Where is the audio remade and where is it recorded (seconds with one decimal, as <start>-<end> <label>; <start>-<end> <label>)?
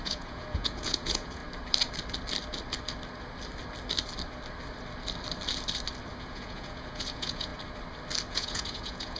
0.0-1.4 remade; 1.4-6.2 recorded; 6.2-7.5 remade; 7.5-8.3 recorded; 8.3-9.2 remade